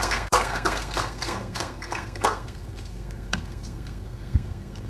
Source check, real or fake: fake